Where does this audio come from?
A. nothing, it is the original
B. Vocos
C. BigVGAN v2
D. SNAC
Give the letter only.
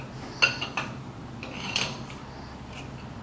A